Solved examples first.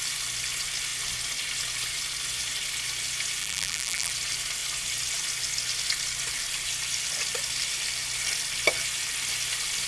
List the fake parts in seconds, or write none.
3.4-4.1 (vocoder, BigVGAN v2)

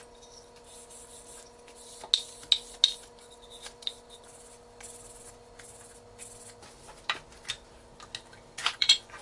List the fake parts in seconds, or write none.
8.6-9.2 (vocoder, Vocos)

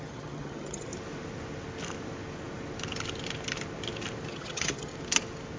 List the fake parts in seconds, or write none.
0.0-0.9 (vocoder, HiFi-GAN); 4.3-4.9

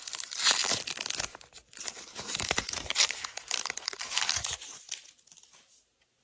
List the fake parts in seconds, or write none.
1.3-4.0 (vocoder, BigVGAN v2)

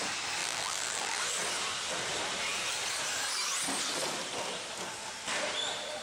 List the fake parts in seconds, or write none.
0.4-1.2 (vocoder, BigVGAN v2)

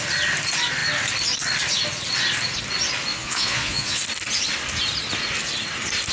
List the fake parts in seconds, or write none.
3.1-4.0 (vocoder, Vocos)

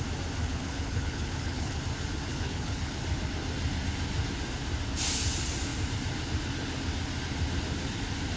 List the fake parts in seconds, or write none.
0.4-1.8 (codec, HILCodec); 2.3-3.0